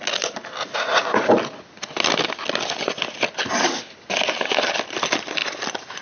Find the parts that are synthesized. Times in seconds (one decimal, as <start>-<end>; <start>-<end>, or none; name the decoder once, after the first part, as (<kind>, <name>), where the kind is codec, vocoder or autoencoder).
0.6-1.3 (vocoder, Vocos)